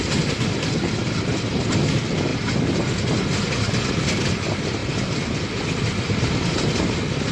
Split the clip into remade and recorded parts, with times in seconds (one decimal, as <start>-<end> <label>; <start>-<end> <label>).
0.0-2.3 remade; 2.3-3.0 recorded; 3.0-4.8 remade; 4.8-7.3 recorded